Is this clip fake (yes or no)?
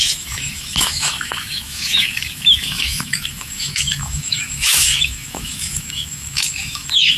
yes